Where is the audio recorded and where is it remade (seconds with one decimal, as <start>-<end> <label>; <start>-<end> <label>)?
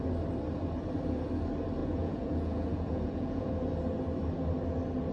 0.0-1.8 recorded; 1.8-3.5 remade; 3.5-5.1 recorded